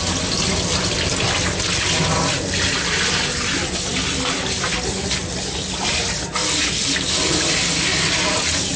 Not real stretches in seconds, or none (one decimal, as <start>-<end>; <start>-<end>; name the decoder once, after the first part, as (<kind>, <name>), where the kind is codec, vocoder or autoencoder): none